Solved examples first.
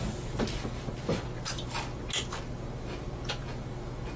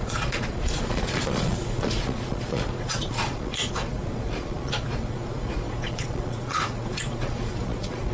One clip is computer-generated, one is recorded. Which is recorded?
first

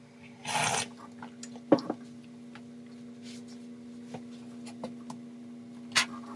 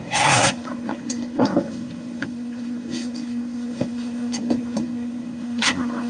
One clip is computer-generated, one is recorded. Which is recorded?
first